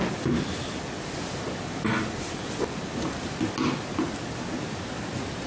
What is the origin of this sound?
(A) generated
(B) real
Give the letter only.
B